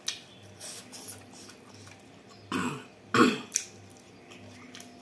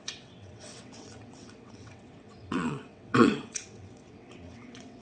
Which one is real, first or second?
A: first